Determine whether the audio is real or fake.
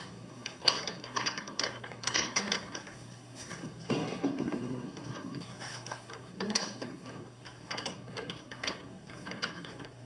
fake